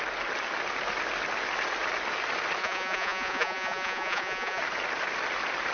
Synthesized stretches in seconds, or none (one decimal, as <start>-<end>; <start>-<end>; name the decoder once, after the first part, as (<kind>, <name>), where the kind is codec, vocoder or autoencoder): 2.6-4.6 (vocoder, Vocos)

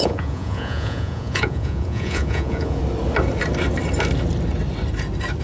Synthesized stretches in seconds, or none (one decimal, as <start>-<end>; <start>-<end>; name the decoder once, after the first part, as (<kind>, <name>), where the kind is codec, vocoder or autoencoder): 0.0-2.8 (vocoder, Vocos)

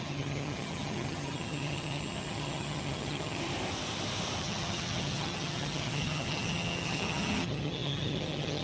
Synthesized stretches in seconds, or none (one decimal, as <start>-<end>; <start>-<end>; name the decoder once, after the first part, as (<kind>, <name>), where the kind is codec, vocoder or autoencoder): 0.0-3.4 (vocoder, HiFi-GAN); 4.4-8.6

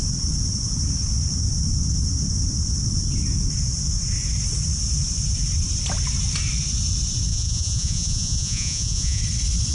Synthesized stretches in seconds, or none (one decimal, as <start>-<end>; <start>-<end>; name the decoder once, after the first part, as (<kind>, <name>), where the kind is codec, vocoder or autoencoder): 7.3-9.2 (vocoder, Vocos)

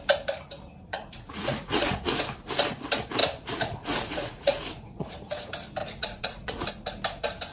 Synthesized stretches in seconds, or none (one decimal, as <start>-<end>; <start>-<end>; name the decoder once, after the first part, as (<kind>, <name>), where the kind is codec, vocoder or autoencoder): 0.9-2.2 (vocoder, Vocos); 3.2-5.1; 5.8-6.7

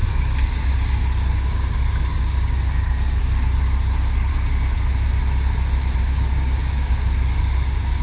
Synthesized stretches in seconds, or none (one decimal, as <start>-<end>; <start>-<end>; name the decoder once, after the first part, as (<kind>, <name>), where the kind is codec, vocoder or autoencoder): 0.0-4.3 (codec, DAC); 6.0-8.0